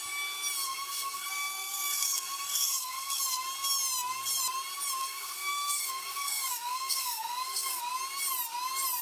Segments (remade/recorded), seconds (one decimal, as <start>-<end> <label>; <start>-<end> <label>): 0.0-0.6 recorded; 0.6-3.2 remade; 3.2-5.0 recorded; 5.0-7.8 remade; 7.8-9.0 recorded